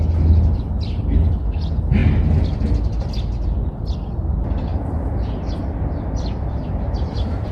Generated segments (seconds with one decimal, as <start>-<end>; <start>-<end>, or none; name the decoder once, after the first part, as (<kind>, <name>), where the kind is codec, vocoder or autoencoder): none